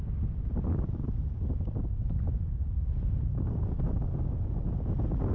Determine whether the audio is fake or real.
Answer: real